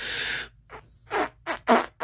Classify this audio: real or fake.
real